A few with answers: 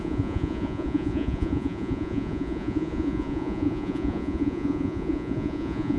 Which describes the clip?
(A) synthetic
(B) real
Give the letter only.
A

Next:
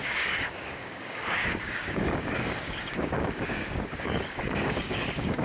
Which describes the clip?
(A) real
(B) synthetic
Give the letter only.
B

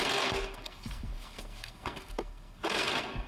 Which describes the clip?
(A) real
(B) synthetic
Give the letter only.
B